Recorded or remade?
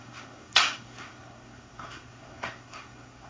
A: remade